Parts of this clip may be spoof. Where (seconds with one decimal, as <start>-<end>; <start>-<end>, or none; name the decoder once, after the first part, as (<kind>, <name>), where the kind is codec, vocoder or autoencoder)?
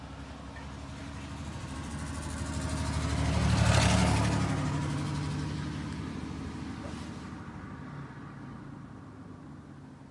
1.0-1.9 (vocoder, BigVGAN v2)